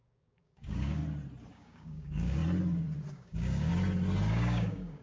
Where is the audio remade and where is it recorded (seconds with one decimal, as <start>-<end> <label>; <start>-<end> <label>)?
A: 0.0-1.0 remade; 1.0-1.5 recorded; 1.5-2.4 remade; 2.4-3.1 recorded; 3.1-3.7 remade; 3.7-4.3 recorded; 4.3-5.0 remade